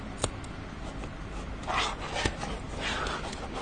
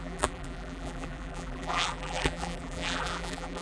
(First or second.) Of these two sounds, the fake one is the second